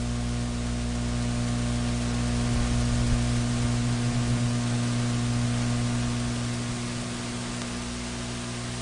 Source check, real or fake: real